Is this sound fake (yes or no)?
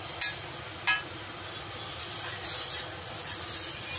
no